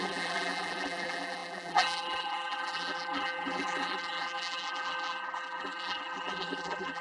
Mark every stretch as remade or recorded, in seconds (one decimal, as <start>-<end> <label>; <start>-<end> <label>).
0.0-7.0 remade